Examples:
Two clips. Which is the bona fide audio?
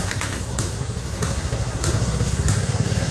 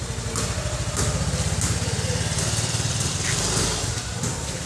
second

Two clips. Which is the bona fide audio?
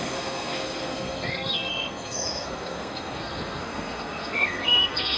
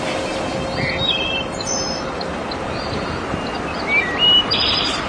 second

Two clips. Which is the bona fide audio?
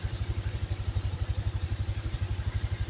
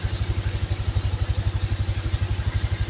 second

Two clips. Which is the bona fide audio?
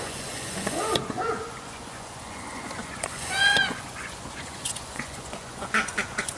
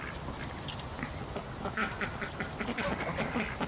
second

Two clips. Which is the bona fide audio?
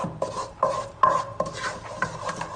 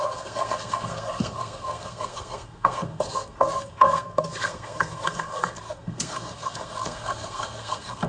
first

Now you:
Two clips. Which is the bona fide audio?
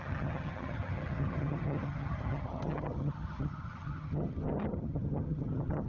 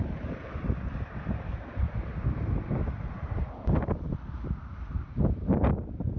second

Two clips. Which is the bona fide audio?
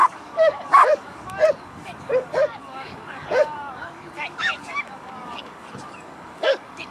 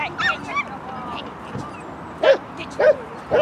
second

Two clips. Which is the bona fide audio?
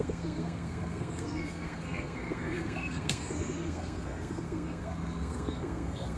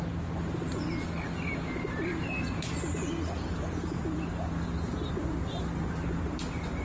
second